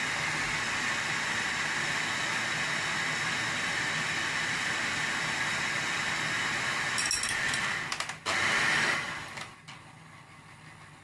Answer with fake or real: real